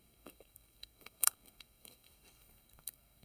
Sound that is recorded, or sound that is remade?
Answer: remade